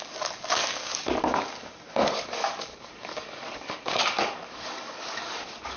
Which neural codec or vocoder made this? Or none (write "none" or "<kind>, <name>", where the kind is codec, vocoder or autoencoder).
codec, DAC